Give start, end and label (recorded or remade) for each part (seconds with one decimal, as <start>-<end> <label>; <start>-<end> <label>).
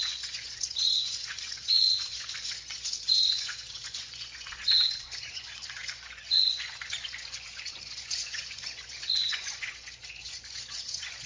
0.0-11.3 remade